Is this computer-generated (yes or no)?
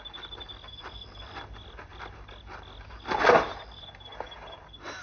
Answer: no